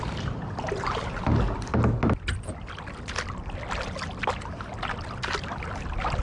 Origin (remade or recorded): recorded